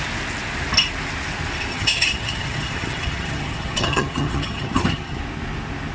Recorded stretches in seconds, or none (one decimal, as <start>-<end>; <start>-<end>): 0.0-1.7; 5.2-5.9